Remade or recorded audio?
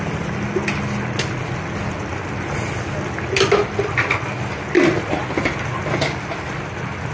recorded